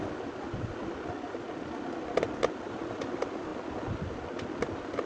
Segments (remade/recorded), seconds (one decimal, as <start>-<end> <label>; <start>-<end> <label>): 0.0-5.1 recorded